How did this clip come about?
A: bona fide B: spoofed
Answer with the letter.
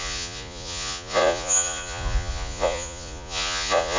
B